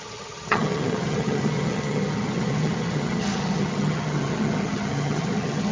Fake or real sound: fake